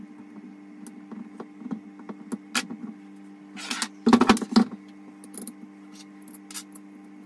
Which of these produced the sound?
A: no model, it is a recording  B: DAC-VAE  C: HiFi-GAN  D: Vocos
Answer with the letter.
A